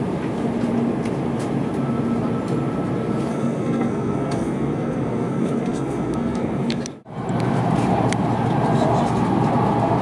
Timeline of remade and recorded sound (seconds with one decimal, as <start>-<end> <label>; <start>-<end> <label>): 0.0-3.3 recorded; 3.3-6.8 remade; 6.8-10.0 recorded